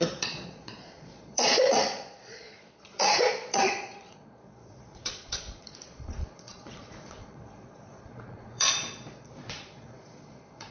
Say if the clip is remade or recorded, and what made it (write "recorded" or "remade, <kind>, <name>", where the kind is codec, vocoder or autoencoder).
remade, vocoder, Vocos